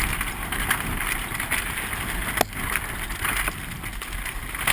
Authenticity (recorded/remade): recorded